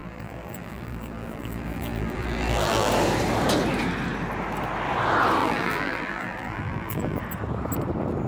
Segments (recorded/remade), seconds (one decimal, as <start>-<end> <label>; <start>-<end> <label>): 0.0-2.9 remade; 2.9-5.4 recorded; 5.4-7.2 remade; 7.2-8.3 recorded